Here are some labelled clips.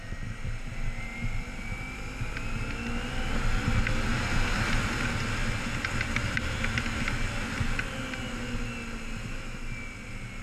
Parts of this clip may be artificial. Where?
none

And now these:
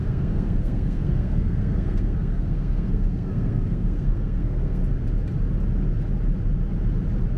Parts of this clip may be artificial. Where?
0.0-4.8

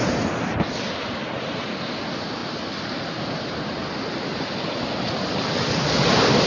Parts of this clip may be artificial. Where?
none